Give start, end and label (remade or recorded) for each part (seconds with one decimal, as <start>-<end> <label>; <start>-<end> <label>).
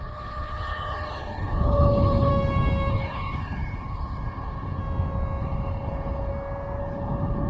0.0-2.3 remade; 2.3-2.9 recorded; 2.9-4.8 remade; 4.8-5.4 recorded; 5.4-6.3 remade; 6.3-6.8 recorded; 6.8-7.5 remade